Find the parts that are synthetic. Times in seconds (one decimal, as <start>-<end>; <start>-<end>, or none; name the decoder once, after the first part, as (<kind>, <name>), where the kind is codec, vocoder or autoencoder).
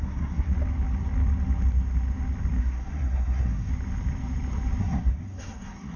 0.0-0.5 (codec, SNAC); 2.6-3.7; 4.8-6.0